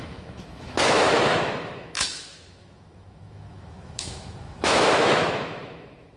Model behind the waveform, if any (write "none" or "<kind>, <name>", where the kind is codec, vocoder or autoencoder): autoencoder, DAC-VAE